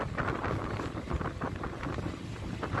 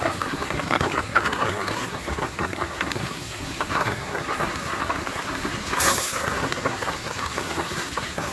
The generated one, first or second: second